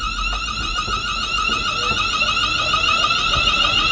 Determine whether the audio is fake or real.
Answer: real